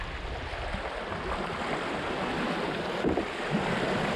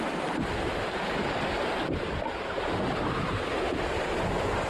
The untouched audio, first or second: first